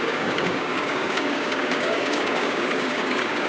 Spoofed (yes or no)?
yes